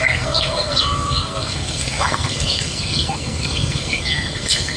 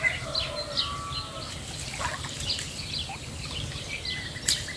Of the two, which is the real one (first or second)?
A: second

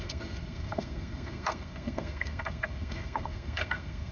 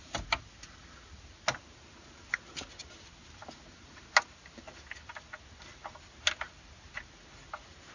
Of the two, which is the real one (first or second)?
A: second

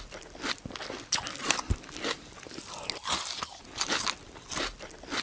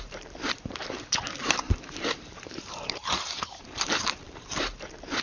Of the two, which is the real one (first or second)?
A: first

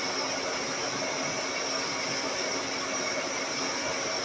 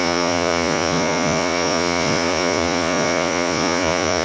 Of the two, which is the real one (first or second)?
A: first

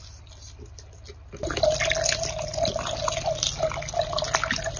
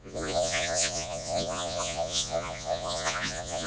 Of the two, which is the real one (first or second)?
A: first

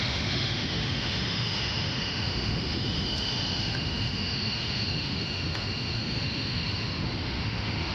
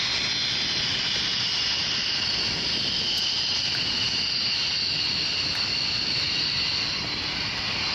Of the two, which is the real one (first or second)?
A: second